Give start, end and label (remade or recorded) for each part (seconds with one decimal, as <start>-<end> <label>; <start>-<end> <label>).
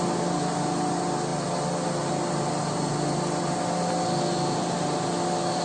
0.0-5.6 recorded